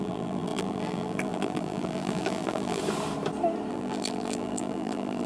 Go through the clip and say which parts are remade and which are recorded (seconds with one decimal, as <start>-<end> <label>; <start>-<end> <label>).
0.0-2.8 remade; 2.8-3.7 recorded; 3.7-5.3 remade